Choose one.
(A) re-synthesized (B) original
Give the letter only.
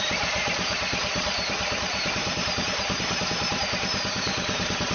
A